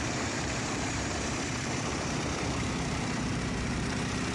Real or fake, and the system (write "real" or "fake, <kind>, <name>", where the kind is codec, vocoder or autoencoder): fake, vocoder, BigVGAN v2